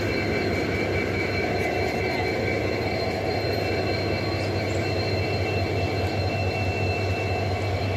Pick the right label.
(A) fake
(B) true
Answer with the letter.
B